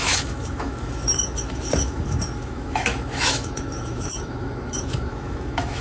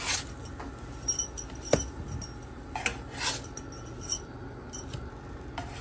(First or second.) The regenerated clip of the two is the first